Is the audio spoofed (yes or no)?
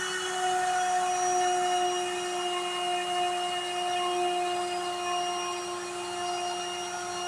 no